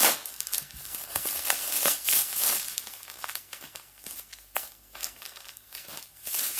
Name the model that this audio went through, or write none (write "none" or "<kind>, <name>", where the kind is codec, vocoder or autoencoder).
codec, SNAC